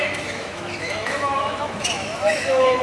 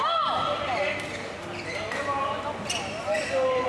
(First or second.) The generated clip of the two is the first